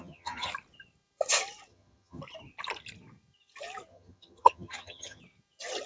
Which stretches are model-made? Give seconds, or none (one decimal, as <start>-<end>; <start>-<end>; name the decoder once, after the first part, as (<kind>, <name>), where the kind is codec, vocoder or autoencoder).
0.0-0.5 (vocoder, HiFi-GAN); 1.7-2.2; 3.9-5.2